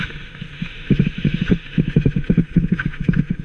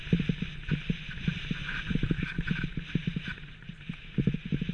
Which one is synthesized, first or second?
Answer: first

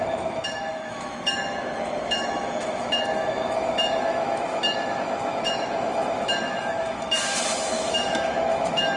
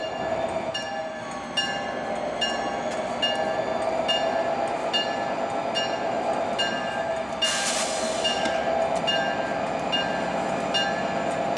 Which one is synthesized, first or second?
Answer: first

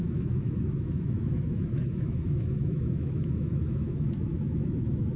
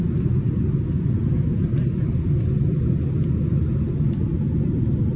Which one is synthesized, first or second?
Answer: first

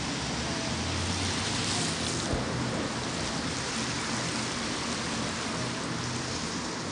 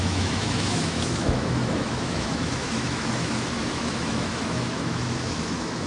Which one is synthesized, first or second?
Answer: second